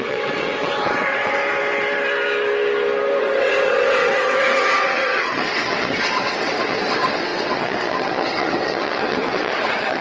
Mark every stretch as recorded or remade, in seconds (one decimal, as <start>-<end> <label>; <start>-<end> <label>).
0.0-1.4 remade; 1.4-3.2 recorded; 3.2-10.0 remade